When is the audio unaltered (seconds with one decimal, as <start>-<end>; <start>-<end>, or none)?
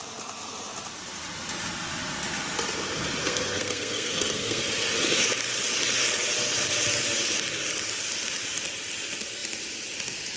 0.0-3.2; 4.6-10.4